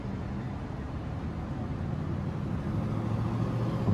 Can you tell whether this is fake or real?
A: real